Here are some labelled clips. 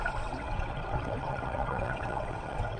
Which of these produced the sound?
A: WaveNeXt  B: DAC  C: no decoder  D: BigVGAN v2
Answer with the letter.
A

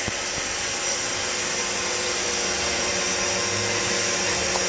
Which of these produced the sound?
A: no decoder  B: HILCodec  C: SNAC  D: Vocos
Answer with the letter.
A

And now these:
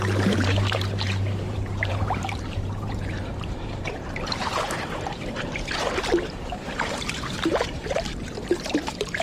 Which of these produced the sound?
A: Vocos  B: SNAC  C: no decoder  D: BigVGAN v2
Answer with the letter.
D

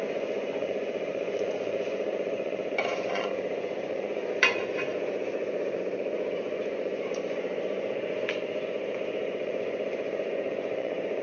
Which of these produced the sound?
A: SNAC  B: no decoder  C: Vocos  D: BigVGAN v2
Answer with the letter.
C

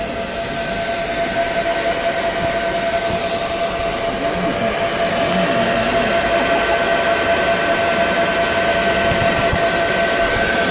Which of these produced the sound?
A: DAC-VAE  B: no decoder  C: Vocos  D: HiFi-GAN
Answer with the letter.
B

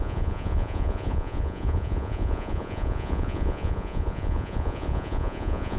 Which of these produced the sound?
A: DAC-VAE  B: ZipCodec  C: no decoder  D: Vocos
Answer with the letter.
D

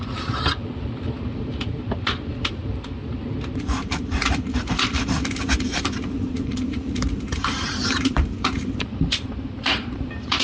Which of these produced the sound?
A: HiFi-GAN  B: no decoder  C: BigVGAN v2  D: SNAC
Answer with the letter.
C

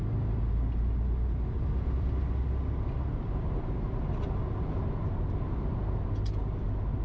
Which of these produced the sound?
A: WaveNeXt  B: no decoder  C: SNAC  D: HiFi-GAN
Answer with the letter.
B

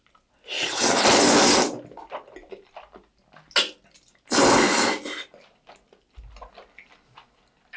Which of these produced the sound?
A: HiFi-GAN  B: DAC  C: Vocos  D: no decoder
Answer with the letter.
D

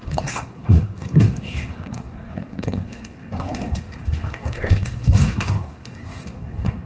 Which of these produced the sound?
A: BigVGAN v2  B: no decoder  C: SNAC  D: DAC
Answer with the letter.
C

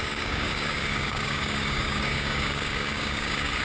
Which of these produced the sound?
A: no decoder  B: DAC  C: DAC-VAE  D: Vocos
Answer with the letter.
B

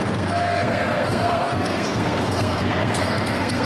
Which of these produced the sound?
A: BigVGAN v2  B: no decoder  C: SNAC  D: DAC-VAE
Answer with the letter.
C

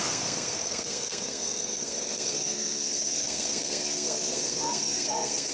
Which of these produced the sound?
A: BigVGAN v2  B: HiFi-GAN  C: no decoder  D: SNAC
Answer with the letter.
D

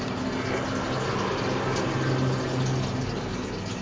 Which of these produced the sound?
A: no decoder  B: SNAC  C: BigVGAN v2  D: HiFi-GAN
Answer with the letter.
A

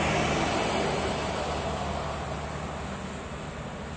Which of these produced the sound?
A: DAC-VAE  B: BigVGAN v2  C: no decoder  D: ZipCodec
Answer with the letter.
C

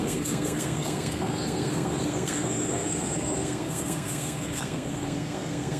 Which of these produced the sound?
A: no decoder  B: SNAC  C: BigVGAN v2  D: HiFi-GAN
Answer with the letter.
B